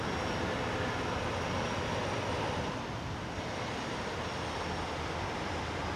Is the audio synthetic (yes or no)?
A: no